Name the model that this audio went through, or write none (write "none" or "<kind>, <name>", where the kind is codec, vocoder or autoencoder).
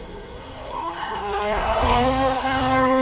codec, SNAC